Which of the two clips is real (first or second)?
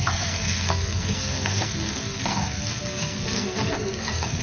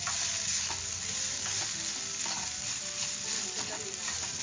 second